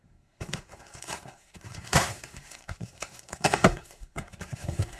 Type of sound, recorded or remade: remade